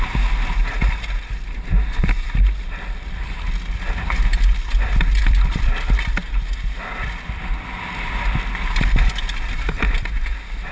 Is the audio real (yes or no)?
yes